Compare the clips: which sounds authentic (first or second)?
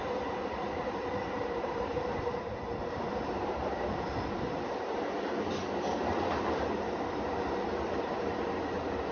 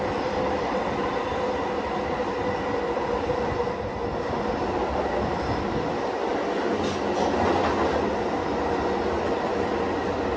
second